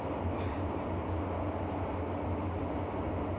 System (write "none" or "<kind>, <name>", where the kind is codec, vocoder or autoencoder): none